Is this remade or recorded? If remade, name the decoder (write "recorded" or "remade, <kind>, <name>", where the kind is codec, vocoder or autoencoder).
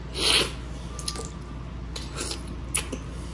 recorded